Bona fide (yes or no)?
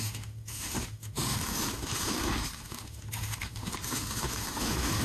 no